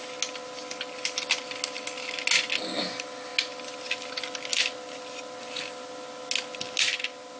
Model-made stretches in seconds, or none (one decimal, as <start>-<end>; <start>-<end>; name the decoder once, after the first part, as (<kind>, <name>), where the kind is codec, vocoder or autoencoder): none